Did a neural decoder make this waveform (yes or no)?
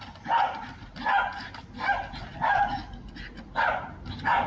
no